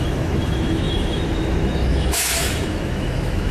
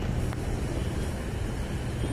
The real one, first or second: second